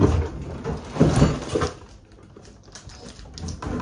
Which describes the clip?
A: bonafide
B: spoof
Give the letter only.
A